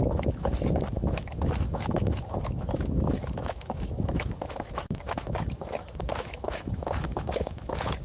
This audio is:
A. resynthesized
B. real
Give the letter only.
A